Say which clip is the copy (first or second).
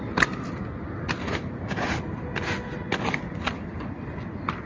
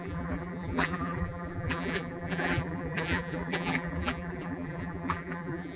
second